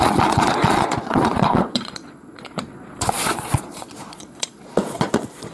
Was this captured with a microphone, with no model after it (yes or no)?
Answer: no